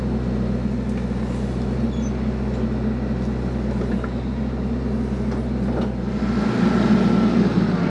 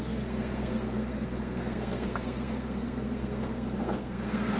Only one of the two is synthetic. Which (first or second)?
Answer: second